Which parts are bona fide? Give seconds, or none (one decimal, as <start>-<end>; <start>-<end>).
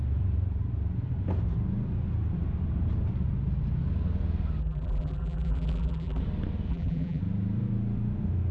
0.0-4.6; 6.2-6.7; 7.2-8.5